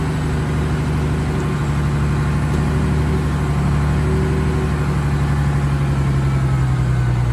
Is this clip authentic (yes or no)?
yes